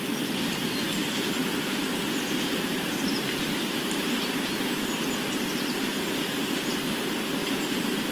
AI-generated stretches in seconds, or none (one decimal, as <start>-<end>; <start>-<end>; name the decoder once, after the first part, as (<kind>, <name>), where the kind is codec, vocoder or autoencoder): 1.4-5.1 (vocoder, BigVGAN v2); 5.9-6.7; 7.4-8.1